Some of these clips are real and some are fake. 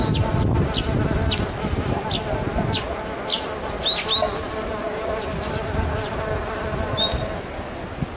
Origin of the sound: real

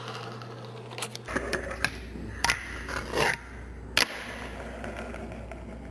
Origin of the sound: real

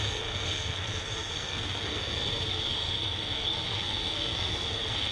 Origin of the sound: fake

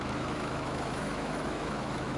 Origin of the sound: fake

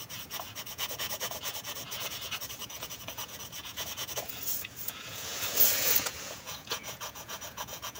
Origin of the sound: fake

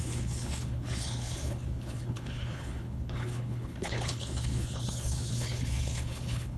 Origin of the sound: fake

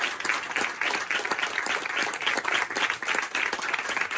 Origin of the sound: real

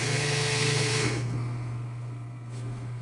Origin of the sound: fake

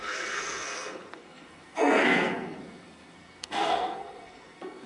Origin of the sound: fake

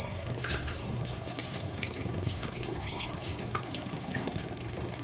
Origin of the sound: fake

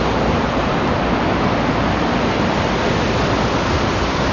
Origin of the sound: real